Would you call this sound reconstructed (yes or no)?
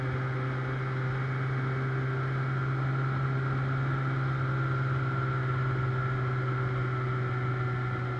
no